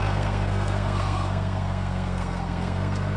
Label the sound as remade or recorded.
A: remade